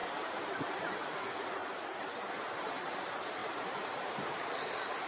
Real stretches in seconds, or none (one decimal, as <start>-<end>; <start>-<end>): 0.0-1.6; 2.3-3.4; 4.5-5.1